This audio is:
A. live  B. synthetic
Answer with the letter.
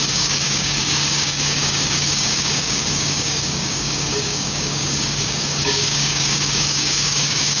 B